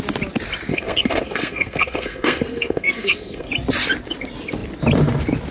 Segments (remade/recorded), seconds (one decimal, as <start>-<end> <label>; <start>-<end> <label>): 0.0-0.7 recorded; 0.7-3.5 remade; 3.5-5.5 recorded